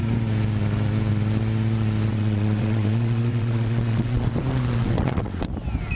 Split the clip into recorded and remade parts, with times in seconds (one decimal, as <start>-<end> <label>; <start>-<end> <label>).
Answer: 0.0-2.1 recorded; 2.1-4.2 remade; 4.2-4.8 recorded; 4.8-5.5 remade; 5.5-6.0 recorded